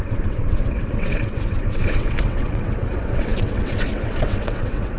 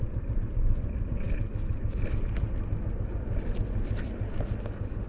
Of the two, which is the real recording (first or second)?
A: second